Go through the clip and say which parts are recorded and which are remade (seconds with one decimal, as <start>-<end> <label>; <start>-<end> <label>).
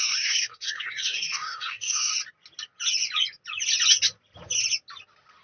0.0-2.1 remade; 2.1-5.4 recorded